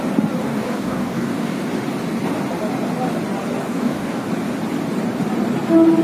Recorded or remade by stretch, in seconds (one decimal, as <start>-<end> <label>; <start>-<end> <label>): 0.0-0.5 recorded; 0.5-1.6 remade; 1.6-3.6 recorded; 3.6-4.3 remade; 4.3-6.0 recorded